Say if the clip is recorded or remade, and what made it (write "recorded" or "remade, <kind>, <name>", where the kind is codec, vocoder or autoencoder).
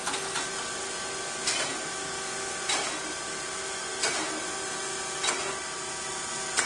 recorded